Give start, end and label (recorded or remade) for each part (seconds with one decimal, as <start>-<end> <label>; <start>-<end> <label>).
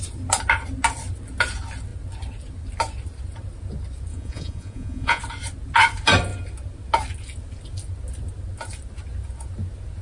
0.0-4.1 recorded; 4.1-5.2 remade; 5.2-10.0 recorded